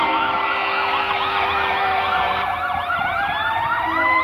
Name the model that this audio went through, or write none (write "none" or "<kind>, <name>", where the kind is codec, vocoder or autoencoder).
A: vocoder, BigVGAN v2